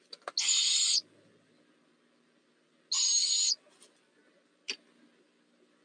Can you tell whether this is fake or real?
real